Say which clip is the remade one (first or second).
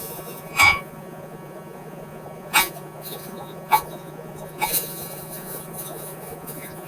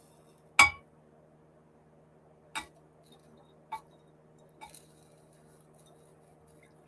first